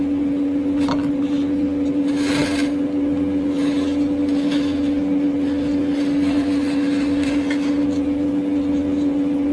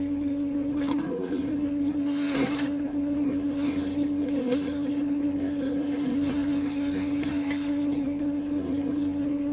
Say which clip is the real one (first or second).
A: first